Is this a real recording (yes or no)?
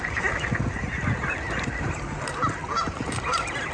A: yes